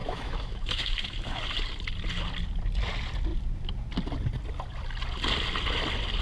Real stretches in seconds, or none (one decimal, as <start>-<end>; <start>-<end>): 1.4-6.2